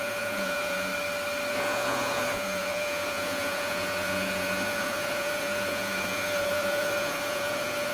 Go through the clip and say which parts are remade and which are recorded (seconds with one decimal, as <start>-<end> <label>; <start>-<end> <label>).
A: 0.0-0.9 remade; 0.9-1.5 recorded; 1.5-7.9 remade

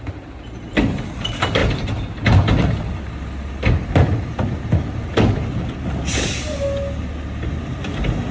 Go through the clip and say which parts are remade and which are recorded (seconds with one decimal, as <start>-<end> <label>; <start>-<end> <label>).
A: 0.0-8.3 recorded